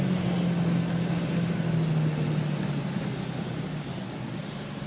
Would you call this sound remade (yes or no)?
no